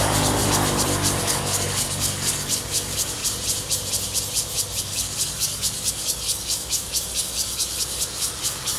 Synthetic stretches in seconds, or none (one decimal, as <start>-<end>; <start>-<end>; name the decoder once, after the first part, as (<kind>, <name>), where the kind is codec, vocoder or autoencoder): 0.0-0.4 (codec, DAC); 1.2-3.2; 4.8-8.8